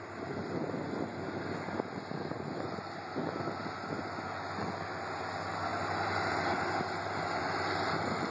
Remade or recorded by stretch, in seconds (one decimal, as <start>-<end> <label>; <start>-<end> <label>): 0.0-8.3 recorded